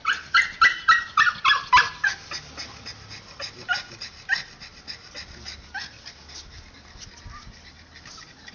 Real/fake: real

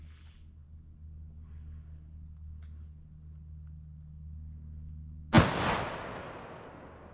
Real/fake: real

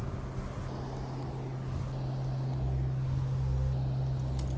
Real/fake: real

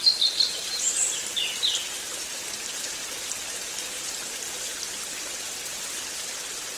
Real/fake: real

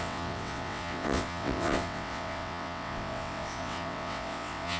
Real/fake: fake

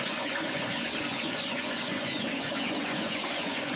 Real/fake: fake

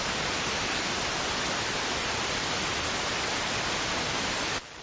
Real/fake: real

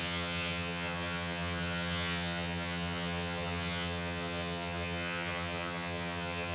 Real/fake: fake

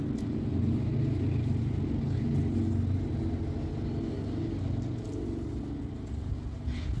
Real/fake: real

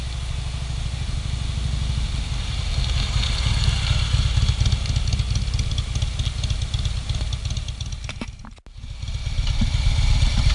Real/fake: real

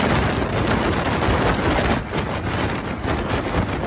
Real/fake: real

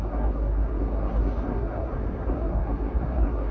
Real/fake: fake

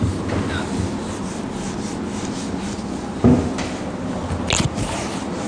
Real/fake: real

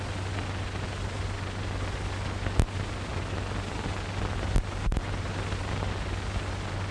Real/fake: real